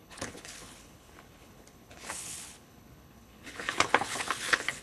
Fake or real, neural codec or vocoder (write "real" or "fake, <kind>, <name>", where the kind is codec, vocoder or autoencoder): fake, codec, HILCodec